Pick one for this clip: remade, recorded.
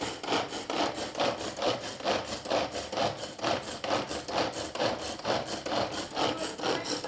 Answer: recorded